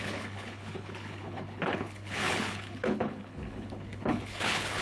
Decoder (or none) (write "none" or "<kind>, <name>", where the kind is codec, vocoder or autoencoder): codec, HILCodec